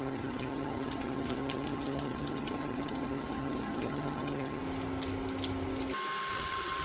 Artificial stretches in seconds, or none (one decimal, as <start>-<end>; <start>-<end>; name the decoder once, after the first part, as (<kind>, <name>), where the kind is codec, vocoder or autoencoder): 0.0-4.6 (vocoder, HiFi-GAN); 6.3-6.8